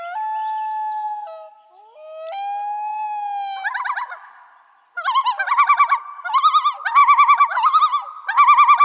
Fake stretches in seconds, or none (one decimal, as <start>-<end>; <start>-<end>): 7.0-7.8